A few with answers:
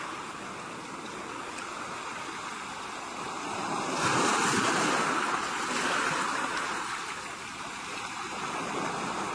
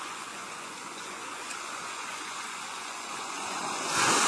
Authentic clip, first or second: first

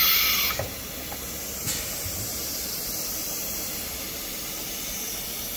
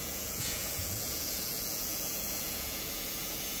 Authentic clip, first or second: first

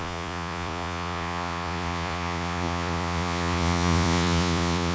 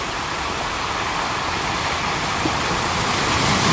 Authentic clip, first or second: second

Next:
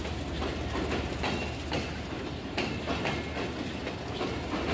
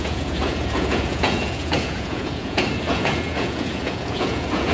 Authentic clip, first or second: first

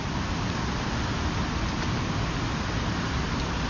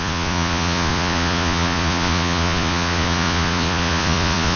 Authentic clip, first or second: first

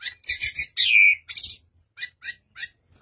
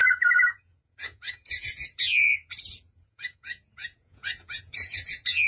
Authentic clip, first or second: first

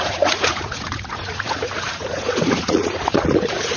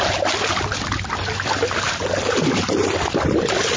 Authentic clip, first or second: second